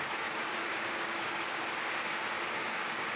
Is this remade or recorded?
remade